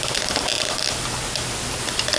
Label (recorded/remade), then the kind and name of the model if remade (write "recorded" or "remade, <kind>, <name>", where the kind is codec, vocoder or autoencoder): recorded